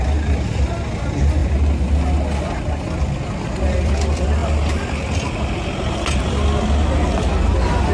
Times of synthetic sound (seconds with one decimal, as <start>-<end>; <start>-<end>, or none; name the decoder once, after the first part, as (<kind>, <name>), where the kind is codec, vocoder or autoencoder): none